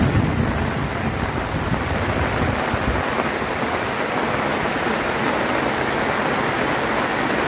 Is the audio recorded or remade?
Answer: recorded